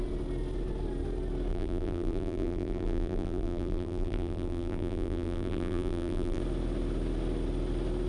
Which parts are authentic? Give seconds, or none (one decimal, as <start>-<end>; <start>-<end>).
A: 0.0-1.5; 6.4-8.1